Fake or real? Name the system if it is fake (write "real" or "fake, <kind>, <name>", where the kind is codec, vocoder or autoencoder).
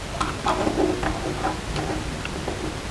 real